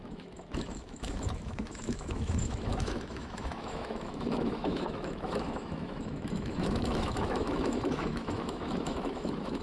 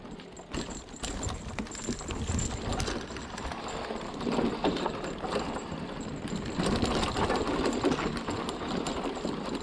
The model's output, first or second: first